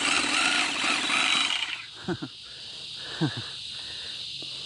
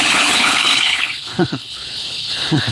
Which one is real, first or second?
first